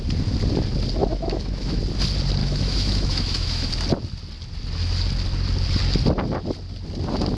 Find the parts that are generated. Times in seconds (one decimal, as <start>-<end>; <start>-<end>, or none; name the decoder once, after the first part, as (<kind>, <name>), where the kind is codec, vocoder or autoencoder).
1.0-1.8 (autoencoder, DAC-VAE); 2.4-3.7